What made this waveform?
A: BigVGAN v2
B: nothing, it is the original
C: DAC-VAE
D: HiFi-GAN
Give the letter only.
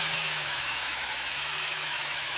C